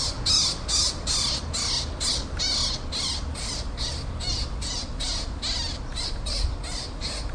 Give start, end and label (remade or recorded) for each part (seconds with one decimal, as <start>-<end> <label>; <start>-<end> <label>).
0.0-7.3 recorded